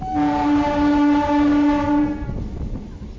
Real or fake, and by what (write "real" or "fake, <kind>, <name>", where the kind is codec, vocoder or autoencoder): real